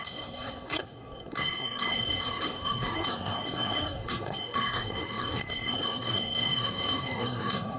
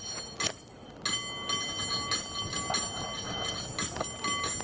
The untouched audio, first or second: second